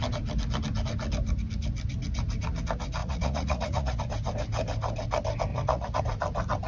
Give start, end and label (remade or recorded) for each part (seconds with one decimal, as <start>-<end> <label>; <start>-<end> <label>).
0.0-3.0 recorded; 3.0-4.0 remade; 4.0-5.5 recorded; 5.5-6.0 remade; 6.0-6.7 recorded